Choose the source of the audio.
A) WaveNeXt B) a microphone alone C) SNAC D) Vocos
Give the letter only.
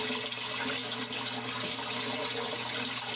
B